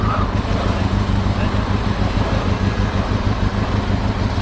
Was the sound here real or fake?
real